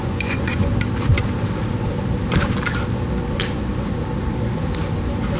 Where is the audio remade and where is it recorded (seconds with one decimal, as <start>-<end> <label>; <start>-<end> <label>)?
0.0-0.7 remade; 0.7-5.4 recorded